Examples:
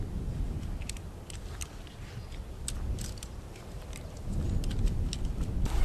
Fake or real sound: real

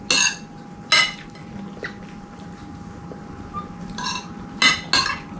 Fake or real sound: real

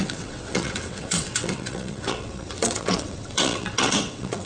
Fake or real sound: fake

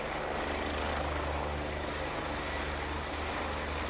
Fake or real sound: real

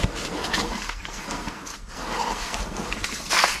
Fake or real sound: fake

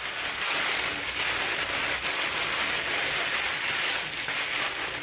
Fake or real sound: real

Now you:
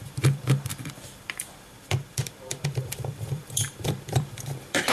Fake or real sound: fake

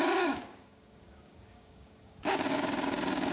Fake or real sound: fake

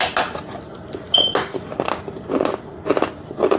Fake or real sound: real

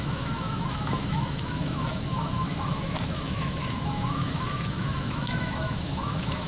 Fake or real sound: fake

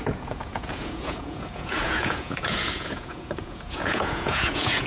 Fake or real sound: fake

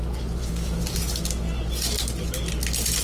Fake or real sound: real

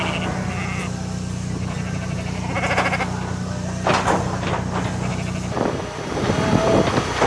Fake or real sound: real